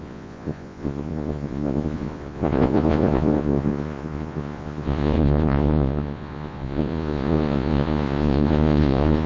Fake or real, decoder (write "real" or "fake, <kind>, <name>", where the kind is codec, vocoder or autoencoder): fake, vocoder, Vocos